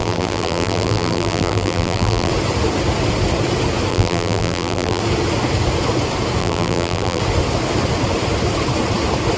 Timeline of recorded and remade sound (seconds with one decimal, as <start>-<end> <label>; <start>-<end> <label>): 0.0-2.3 remade; 2.3-3.9 recorded; 3.9-5.0 remade; 5.0-6.4 recorded; 6.4-7.2 remade; 7.2-9.4 recorded